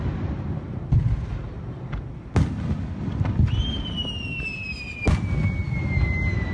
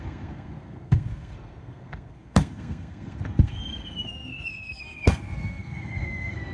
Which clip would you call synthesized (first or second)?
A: second